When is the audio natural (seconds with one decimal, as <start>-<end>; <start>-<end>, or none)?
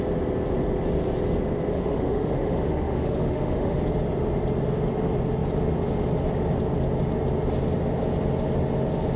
0.0-1.7; 3.8-9.2